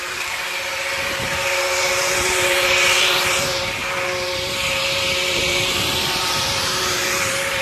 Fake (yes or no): yes